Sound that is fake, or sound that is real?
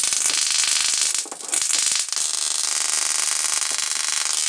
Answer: real